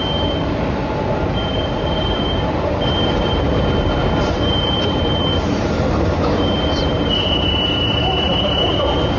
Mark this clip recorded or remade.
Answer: remade